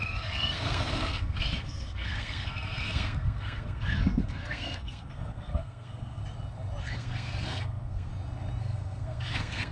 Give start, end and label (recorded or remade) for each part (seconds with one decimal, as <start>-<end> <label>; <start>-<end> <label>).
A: 0.0-6.2 remade; 6.2-6.8 recorded; 6.8-8.1 remade; 8.1-8.6 recorded; 8.6-9.7 remade